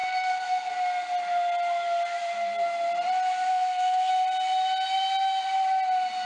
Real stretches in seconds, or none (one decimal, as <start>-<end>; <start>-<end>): 0.7-3.5; 4.1-6.3